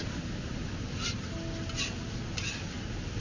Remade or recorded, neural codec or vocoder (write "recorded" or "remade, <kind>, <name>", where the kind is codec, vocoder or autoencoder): recorded